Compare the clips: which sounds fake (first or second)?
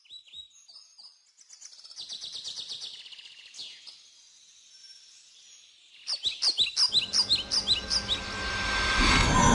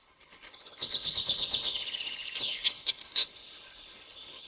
second